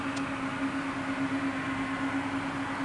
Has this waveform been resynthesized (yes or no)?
no